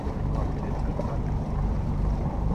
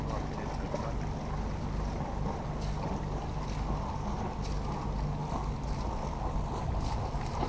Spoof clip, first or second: first